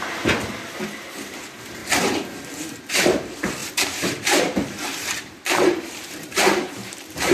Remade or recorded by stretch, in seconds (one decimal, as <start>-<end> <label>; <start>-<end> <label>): 0.0-1.8 remade; 1.8-2.9 recorded; 2.9-7.3 remade